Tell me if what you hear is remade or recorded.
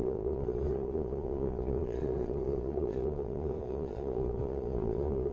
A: remade